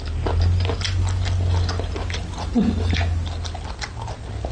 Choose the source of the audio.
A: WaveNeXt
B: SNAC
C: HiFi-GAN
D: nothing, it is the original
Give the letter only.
D